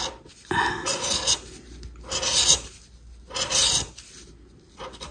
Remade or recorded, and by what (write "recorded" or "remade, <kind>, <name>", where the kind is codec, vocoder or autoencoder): recorded